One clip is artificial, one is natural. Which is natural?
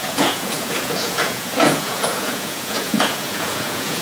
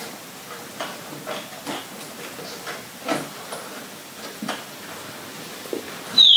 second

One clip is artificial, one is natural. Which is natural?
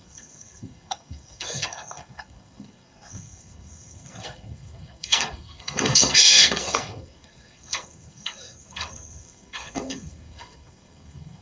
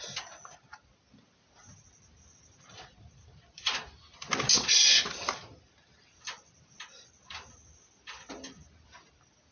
second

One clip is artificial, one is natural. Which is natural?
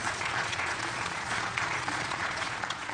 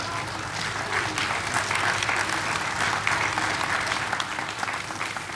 second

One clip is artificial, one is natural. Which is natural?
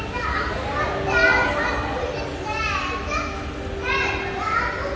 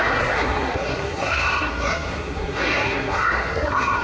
first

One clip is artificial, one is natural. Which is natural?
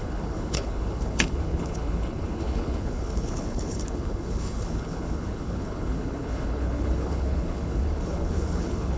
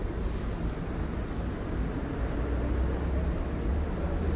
second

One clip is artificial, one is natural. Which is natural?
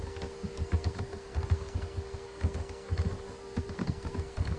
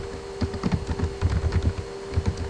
second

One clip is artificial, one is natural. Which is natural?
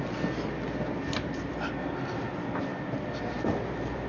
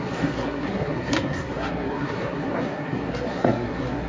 first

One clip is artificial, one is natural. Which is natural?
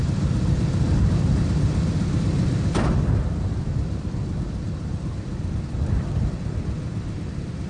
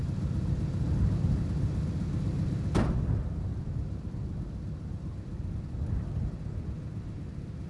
second